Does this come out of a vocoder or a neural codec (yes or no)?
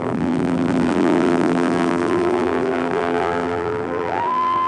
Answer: yes